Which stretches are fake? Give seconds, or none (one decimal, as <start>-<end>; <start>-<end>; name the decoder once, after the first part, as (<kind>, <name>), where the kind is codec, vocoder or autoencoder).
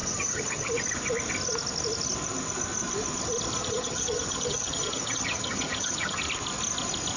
0.0-0.7 (vocoder, HiFi-GAN); 3.6-6.2